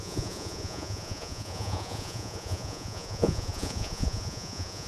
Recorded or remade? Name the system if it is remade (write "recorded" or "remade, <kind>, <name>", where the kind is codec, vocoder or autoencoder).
remade, vocoder, Vocos